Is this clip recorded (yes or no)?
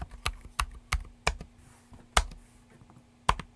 yes